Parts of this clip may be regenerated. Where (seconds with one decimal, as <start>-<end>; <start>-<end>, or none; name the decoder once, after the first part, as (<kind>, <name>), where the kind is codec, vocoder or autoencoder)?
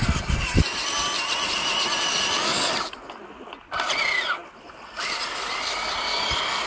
none